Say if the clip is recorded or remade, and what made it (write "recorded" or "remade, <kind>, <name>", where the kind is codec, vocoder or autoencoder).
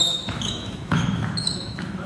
remade, autoencoder, DAC-VAE